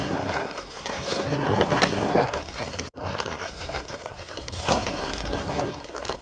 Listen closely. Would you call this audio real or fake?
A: fake